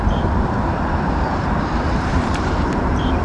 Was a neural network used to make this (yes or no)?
yes